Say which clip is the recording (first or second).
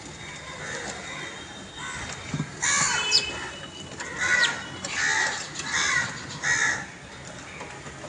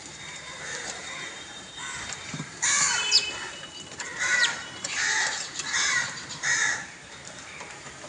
first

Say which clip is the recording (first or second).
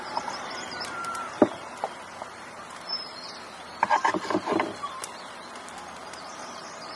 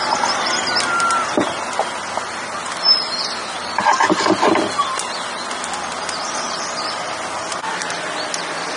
second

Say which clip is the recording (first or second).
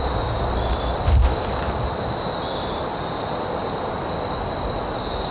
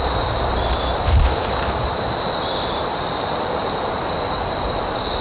first